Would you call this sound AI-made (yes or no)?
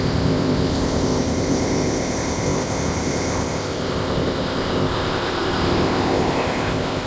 yes